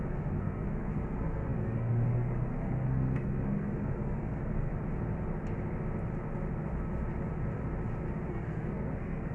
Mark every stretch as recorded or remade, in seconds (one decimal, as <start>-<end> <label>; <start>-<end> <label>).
0.0-4.7 remade; 4.7-8.3 recorded; 8.3-9.3 remade